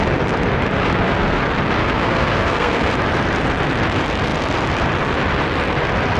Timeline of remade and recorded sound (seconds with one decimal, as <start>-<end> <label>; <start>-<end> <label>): 0.0-0.8 recorded; 0.8-1.4 remade; 1.4-1.8 recorded; 1.8-2.9 remade; 2.9-6.2 recorded